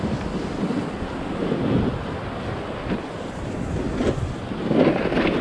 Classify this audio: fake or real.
real